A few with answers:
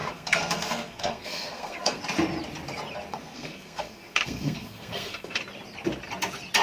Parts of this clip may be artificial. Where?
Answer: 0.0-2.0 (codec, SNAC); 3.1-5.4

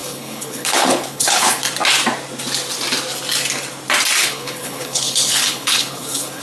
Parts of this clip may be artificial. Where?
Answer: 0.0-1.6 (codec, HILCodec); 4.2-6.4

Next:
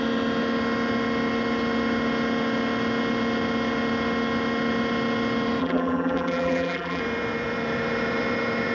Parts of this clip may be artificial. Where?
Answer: 5.6-7.0 (vocoder, BigVGAN v2)

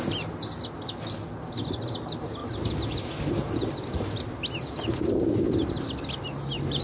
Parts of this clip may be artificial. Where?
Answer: none

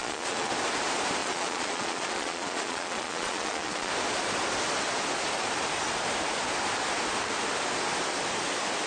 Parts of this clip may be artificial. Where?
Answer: 0.0-0.5 (vocoder, Vocos); 1.2-3.9